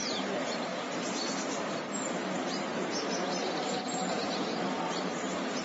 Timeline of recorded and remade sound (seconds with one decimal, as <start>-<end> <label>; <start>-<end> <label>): 0.0-0.7 remade; 0.7-2.2 recorded; 2.2-5.6 remade

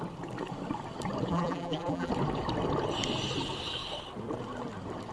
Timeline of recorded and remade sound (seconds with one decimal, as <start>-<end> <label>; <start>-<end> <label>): 0.0-1.3 recorded; 1.3-2.1 remade; 2.1-5.1 recorded

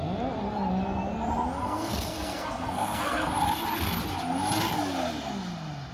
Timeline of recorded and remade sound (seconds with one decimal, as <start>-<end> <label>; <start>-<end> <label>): 0.0-1.6 recorded; 1.6-3.3 remade; 3.3-5.9 recorded

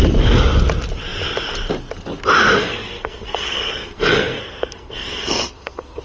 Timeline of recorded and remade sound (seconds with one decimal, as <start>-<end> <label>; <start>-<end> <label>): 0.0-2.6 recorded; 2.6-6.0 remade